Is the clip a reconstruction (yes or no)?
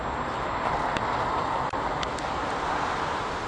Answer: no